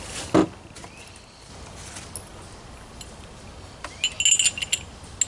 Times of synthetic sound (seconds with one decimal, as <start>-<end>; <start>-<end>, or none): none